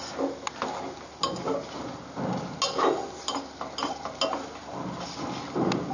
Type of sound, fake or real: real